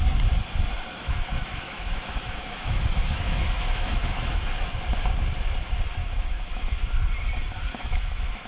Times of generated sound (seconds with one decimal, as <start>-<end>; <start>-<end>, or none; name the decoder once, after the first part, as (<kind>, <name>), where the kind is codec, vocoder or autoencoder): 0.9-4.4 (autoencoder, DAC-VAE); 6.0-6.7; 7.7-8.5